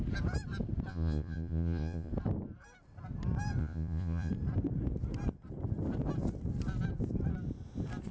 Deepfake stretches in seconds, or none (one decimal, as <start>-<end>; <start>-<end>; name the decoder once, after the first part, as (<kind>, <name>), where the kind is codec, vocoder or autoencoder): 0.9-2.1 (vocoder, Vocos); 3.6-4.3